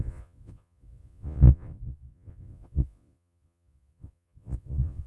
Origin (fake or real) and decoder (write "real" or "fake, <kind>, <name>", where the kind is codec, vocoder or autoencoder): fake, vocoder, Vocos